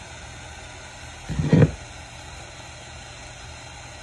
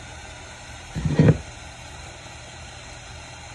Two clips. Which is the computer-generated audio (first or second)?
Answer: second